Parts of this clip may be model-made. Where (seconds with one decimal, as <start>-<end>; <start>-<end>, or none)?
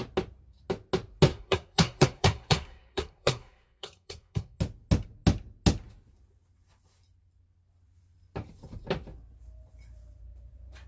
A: 1.3-4.6